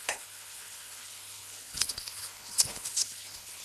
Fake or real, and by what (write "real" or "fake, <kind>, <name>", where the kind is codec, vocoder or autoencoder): fake, codec, HILCodec